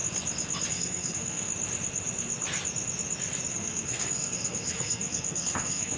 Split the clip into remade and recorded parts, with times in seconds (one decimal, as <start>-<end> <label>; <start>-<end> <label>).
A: 0.0-0.7 recorded; 0.7-1.5 remade; 1.5-3.5 recorded; 3.5-6.0 remade